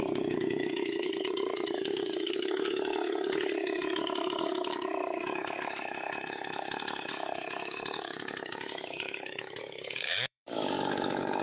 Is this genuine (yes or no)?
no